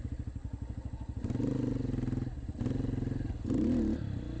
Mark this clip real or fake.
real